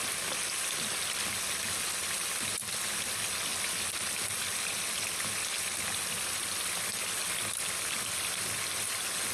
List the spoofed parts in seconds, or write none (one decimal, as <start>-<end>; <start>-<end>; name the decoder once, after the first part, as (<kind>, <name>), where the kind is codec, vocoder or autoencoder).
none